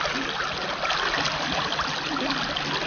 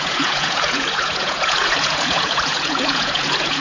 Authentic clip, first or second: first